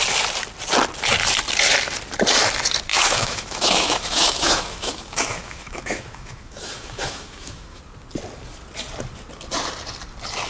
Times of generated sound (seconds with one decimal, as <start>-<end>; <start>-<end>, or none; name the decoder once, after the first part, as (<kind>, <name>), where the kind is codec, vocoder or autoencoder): 2.9-7.8 (autoencoder, DAC-VAE)